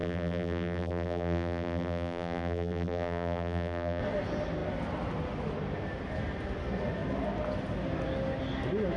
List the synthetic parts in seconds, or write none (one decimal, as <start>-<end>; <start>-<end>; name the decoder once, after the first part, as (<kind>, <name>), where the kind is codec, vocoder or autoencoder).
0.0-4.0 (vocoder, BigVGAN v2)